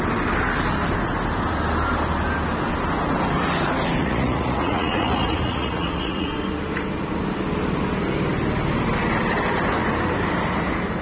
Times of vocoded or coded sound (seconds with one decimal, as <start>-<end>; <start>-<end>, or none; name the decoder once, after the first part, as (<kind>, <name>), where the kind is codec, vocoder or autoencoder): 4.0-6.3 (vocoder, Vocos)